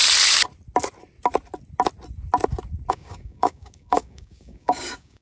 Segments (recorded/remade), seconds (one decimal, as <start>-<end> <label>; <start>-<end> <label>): 0.0-2.9 recorded; 2.9-5.2 remade